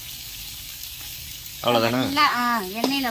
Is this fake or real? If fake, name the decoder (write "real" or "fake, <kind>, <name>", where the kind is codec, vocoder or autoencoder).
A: fake, codec, DAC